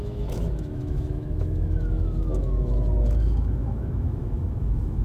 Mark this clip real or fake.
fake